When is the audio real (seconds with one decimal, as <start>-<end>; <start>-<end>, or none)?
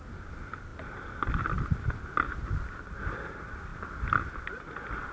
0.0-5.1